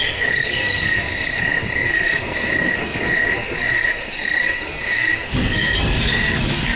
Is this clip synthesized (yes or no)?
yes